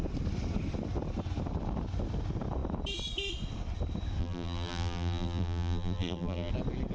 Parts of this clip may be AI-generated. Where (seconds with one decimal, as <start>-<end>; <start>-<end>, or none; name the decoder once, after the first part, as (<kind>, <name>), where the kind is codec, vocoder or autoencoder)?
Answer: 4.2-6.5 (vocoder, BigVGAN v2)